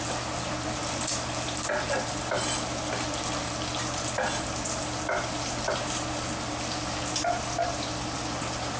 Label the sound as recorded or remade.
recorded